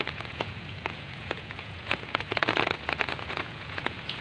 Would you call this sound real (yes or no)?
no